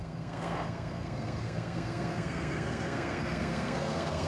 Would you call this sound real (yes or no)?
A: no